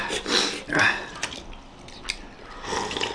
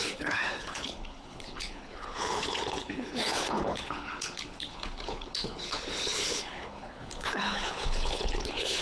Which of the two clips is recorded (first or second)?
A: first